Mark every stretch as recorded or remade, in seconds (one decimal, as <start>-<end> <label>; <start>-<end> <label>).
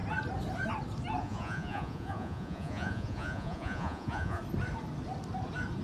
0.0-1.2 recorded; 1.2-4.4 remade; 4.4-5.8 recorded